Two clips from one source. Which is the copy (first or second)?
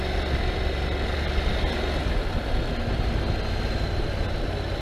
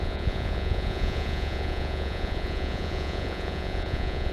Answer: second